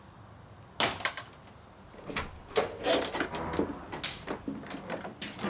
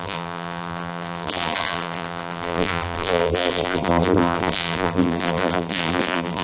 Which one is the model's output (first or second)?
second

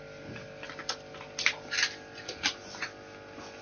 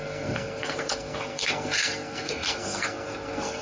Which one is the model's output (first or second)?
second